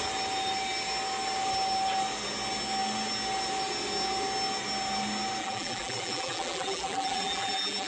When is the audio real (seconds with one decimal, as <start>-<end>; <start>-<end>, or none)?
0.0-5.4